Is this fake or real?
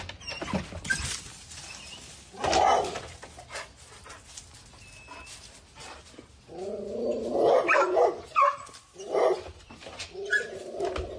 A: real